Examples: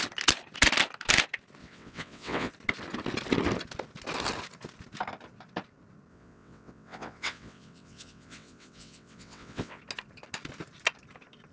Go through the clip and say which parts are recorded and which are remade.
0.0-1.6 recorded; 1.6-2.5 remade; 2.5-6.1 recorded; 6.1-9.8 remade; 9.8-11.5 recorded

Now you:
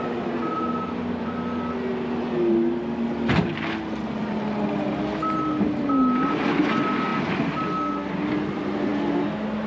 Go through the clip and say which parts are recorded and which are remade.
0.0-9.7 recorded

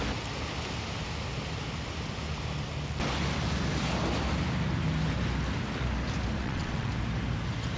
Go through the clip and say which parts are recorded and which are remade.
0.0-6.4 recorded; 6.4-6.9 remade; 6.9-7.8 recorded

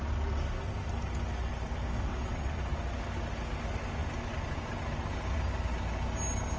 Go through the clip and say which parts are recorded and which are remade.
0.0-2.1 recorded; 2.1-2.6 remade; 2.6-6.6 recorded

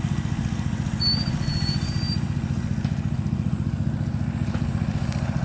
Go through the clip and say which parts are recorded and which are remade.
0.0-5.4 recorded

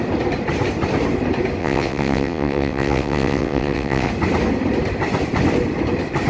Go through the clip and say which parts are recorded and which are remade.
0.0-1.6 recorded; 1.6-4.1 remade; 4.1-6.3 recorded

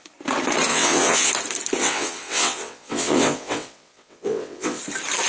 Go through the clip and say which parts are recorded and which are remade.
0.0-0.7 recorded; 0.7-1.3 remade; 1.3-1.8 recorded; 1.8-4.8 remade; 4.8-5.3 recorded

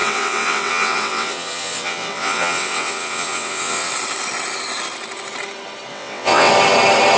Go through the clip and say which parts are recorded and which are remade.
0.0-3.9 remade; 3.9-5.9 recorded; 5.9-6.5 remade; 6.5-7.2 recorded